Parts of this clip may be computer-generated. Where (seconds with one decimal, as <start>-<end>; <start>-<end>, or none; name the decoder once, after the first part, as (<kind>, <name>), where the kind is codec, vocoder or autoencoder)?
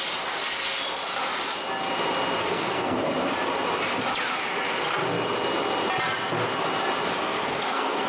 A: 2.4-3.1 (codec, SNAC); 7.2-8.1